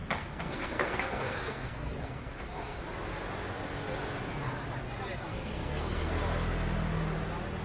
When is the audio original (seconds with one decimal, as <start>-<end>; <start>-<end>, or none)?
2.8-5.3; 6.2-7.6